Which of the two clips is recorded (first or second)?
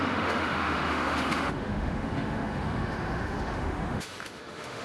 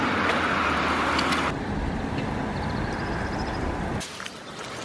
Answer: second